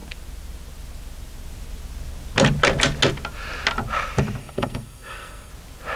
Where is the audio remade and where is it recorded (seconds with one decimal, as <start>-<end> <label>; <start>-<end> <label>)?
0.0-4.4 recorded; 4.4-5.5 remade; 5.5-6.0 recorded